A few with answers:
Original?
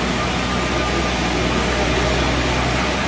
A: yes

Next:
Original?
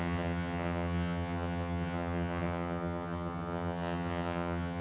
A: no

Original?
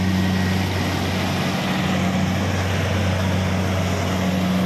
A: yes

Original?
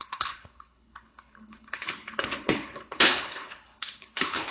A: no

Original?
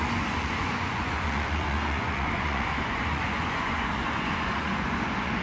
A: no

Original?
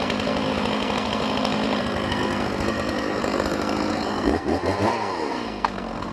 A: no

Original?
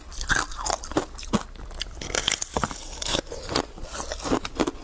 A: yes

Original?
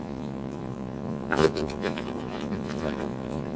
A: no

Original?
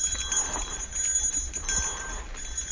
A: yes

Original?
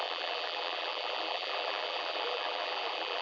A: no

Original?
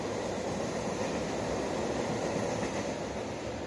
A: yes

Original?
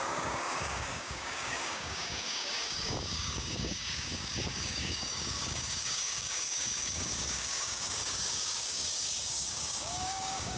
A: no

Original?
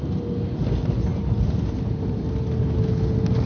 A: yes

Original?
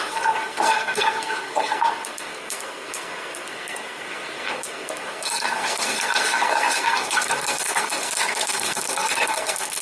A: no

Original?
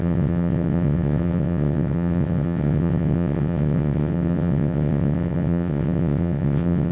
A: no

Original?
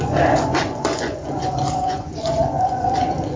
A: no